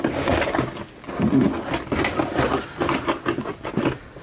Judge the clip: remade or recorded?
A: recorded